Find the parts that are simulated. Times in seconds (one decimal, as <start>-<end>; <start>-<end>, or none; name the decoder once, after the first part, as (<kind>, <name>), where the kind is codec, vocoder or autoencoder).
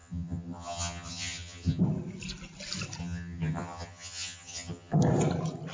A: 0.0-1.8 (vocoder, HiFi-GAN); 3.0-5.0